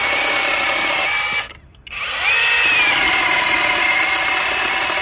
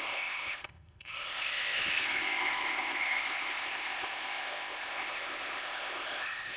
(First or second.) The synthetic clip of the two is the second